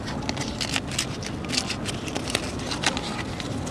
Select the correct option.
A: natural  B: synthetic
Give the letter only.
A